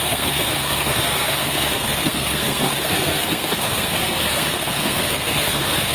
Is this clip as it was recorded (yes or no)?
no